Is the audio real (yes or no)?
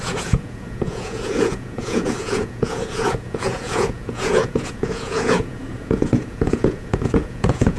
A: no